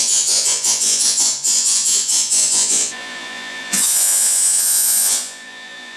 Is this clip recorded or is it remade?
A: remade